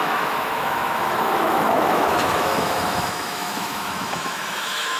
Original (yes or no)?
no